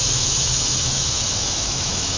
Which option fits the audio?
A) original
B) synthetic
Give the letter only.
B